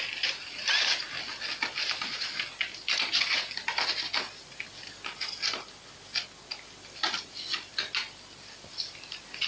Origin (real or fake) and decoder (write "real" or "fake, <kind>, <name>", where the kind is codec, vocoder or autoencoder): real